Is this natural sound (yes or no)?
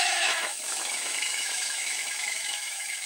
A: no